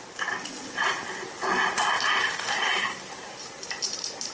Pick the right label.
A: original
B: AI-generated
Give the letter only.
A